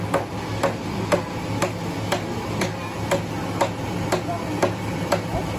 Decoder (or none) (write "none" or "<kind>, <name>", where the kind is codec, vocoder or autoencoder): none